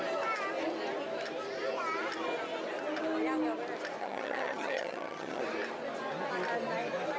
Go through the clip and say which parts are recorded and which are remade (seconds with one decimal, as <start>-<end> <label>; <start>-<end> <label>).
0.0-4.0 recorded; 4.0-5.4 remade; 5.4-7.2 recorded